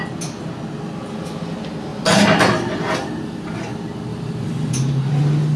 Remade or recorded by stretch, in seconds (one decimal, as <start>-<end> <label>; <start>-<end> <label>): 0.0-1.9 recorded; 1.9-3.6 remade; 3.6-4.1 recorded; 4.1-5.1 remade; 5.1-5.6 recorded